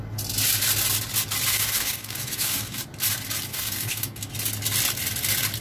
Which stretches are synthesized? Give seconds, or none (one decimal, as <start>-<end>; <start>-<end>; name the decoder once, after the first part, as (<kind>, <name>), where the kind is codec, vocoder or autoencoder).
1.5-2.8 (codec, DAC); 3.5-4.3